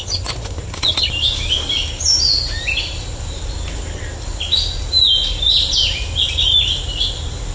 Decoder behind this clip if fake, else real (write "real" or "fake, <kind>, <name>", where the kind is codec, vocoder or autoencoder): real